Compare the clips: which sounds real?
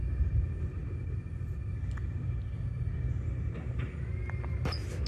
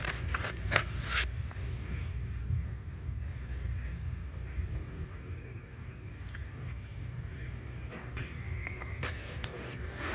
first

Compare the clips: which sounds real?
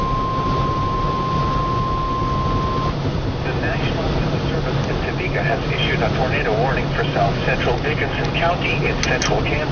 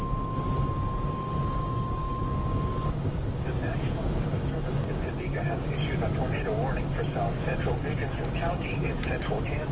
first